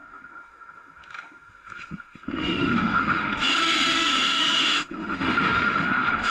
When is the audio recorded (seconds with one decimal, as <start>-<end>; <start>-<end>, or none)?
none